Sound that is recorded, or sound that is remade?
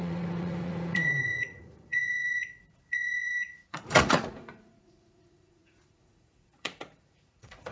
remade